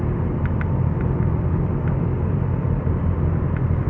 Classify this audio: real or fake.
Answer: fake